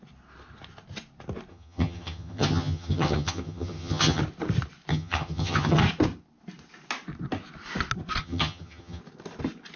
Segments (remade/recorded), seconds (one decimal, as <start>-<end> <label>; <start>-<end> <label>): 0.0-1.5 recorded; 1.5-4.2 remade; 4.2-4.9 recorded; 4.9-5.8 remade; 5.8-8.2 recorded; 8.2-9.0 remade; 9.0-9.8 recorded